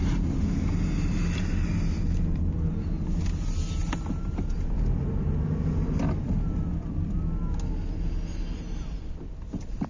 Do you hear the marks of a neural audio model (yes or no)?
no